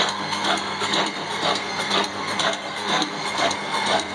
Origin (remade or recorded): remade